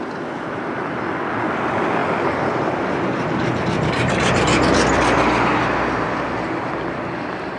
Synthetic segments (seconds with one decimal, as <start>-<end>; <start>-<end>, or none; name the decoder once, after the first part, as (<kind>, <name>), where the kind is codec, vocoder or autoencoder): none